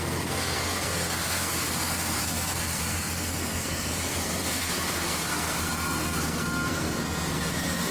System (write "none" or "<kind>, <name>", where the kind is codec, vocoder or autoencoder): codec, SNAC